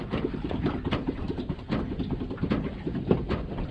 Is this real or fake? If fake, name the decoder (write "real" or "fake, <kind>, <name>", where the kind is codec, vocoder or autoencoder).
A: real